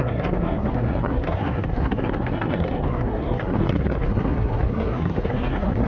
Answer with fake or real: fake